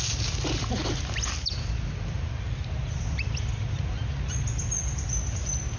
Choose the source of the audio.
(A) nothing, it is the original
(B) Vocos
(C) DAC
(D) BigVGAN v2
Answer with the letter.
A